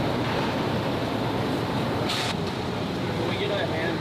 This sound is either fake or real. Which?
fake